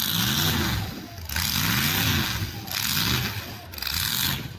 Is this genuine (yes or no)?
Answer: yes